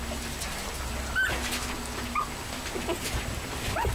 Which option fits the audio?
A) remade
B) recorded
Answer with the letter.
B